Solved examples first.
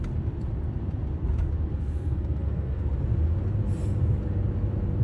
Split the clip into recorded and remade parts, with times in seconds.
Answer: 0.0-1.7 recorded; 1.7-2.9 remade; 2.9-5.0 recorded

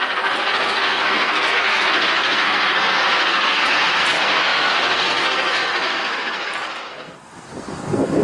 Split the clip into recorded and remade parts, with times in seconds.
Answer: 0.0-8.2 remade

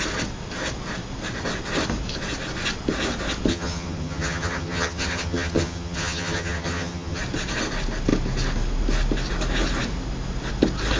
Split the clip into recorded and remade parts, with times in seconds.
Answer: 0.0-3.5 recorded; 3.5-7.2 remade; 7.2-11.0 recorded

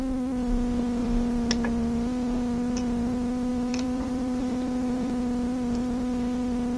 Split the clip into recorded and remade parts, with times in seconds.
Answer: 0.0-1.0 recorded; 1.0-1.5 remade; 1.5-3.5 recorded; 3.5-5.1 remade; 5.1-6.8 recorded

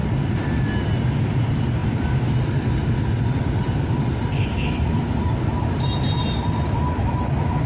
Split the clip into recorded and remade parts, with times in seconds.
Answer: 0.0-7.7 recorded

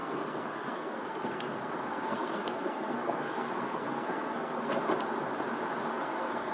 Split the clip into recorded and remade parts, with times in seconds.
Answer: 0.0-4.8 remade; 4.8-5.9 recorded; 5.9-6.5 remade